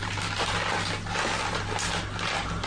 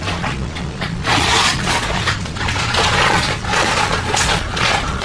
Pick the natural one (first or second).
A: first